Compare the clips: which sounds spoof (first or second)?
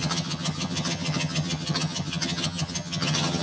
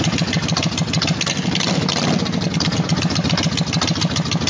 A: first